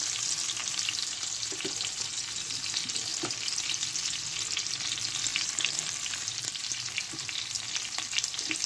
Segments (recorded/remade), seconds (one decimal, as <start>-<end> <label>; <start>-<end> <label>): 0.0-0.6 recorded; 0.6-1.3 remade; 1.3-3.1 recorded; 3.1-3.7 remade; 3.7-5.3 recorded; 5.3-8.7 remade